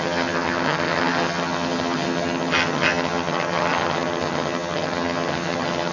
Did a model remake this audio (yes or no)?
yes